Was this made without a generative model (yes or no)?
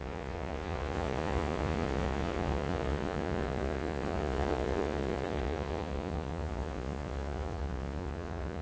no